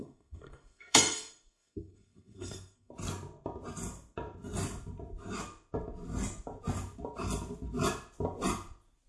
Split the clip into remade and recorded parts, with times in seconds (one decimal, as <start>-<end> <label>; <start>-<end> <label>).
0.0-2.9 remade; 2.9-9.1 recorded